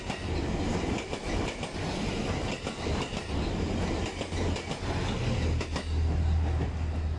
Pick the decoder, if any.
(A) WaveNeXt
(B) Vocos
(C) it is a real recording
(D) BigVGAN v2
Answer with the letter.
C